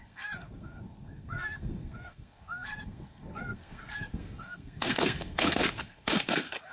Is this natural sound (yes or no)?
no